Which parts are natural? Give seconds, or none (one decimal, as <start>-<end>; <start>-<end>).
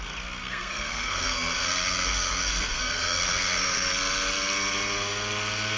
0.0-0.4; 3.9-5.8